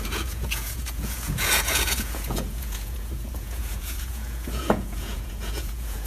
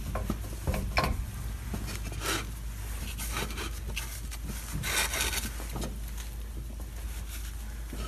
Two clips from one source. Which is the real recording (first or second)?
second